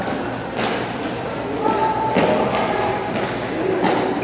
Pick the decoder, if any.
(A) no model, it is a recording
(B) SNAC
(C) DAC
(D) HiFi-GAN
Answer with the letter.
A